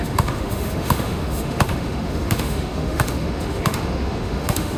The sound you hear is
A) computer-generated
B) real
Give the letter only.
A